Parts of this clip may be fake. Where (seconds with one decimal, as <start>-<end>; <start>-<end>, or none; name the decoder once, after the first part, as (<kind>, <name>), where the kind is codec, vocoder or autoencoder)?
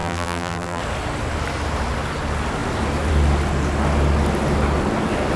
0.0-0.8 (vocoder, BigVGAN v2)